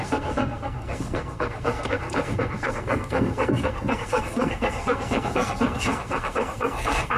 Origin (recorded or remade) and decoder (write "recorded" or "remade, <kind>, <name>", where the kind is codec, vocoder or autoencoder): remade, codec, SNAC